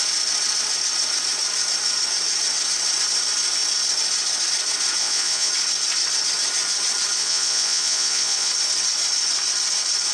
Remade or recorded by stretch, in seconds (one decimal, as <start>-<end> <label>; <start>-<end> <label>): 0.0-5.0 recorded; 5.0-5.5 remade; 5.5-7.2 recorded; 7.2-8.5 remade; 8.5-10.1 recorded